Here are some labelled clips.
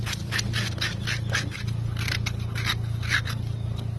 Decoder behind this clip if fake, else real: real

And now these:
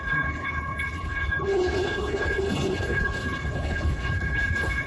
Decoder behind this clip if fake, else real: fake, codec, HILCodec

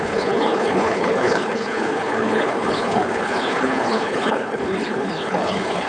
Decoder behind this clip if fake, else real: fake, codec, HILCodec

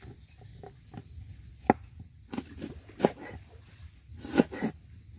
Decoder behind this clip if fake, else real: real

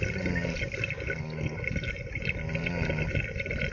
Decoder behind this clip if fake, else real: real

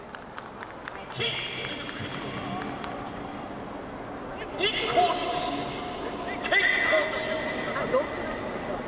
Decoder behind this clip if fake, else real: real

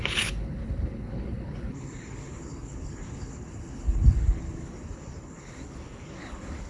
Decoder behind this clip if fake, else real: fake, codec, HILCodec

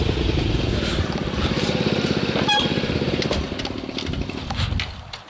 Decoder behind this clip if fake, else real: real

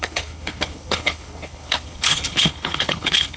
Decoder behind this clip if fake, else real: fake, codec, HILCodec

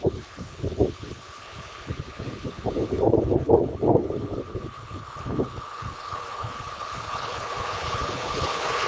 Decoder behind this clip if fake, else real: fake, codec, HILCodec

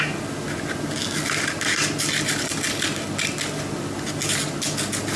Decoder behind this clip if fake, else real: real